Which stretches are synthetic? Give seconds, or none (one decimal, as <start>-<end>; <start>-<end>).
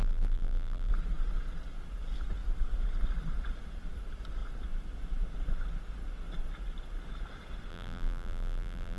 0.0-0.9; 7.7-9.0